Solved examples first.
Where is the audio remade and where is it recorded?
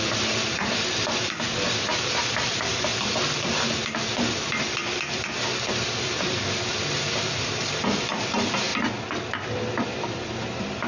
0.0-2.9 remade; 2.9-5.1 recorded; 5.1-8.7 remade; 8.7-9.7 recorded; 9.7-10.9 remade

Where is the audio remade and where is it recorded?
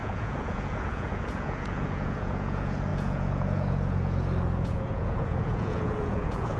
0.0-6.6 remade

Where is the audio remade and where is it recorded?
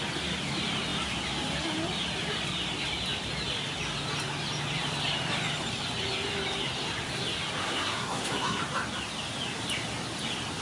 0.0-7.6 recorded; 7.6-8.6 remade; 8.6-10.6 recorded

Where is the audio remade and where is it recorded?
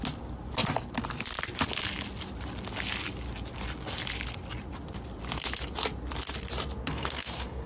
0.0-6.8 recorded; 6.8-7.7 remade